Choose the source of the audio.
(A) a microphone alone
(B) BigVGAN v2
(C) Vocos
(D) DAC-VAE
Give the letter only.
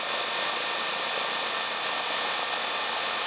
A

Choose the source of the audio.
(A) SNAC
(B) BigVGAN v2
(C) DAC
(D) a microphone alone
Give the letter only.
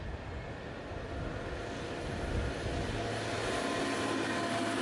D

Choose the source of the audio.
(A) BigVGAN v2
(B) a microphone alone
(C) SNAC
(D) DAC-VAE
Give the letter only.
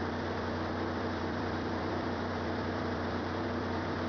A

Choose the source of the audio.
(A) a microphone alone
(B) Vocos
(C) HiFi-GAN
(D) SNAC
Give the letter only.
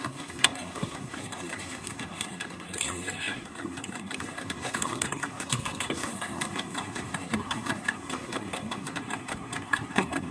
D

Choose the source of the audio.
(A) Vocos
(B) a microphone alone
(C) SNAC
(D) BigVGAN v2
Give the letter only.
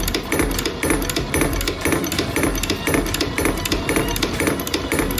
B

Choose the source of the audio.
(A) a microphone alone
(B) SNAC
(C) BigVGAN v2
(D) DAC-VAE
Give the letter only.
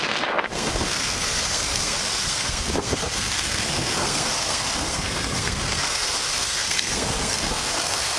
B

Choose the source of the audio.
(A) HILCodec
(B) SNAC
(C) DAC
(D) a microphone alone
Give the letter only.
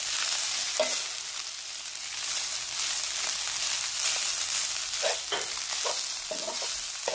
D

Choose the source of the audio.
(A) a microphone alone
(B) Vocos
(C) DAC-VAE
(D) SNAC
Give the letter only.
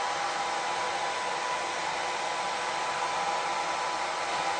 A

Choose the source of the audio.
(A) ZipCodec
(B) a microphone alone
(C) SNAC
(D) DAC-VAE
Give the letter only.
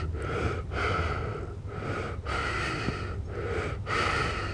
B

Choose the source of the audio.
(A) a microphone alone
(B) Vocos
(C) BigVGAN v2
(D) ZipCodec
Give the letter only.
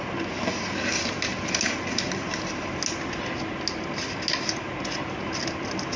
A